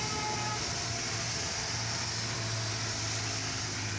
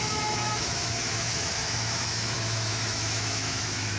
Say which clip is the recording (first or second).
first